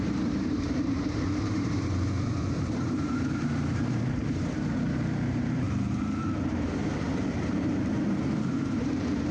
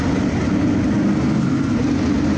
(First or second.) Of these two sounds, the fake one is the first